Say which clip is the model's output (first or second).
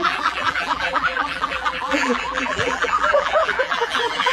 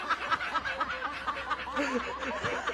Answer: first